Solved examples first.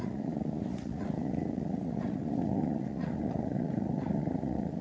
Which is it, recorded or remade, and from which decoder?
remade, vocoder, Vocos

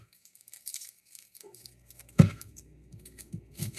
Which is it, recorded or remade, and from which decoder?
remade, codec, SNAC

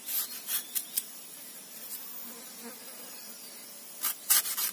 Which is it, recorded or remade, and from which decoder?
recorded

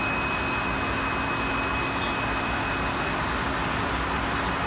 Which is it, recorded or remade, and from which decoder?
recorded